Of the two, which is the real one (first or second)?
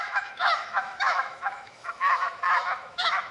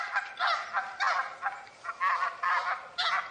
second